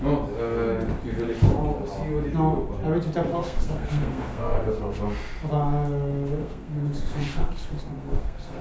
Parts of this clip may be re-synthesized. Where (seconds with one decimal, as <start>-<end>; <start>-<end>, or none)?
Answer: 3.3-5.0; 6.4-8.6